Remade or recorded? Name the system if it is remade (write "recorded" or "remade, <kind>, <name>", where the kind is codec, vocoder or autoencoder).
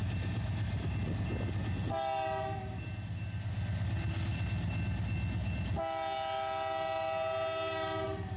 recorded